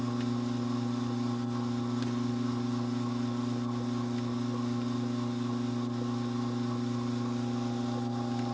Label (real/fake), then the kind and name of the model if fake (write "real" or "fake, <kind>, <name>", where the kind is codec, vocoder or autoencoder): real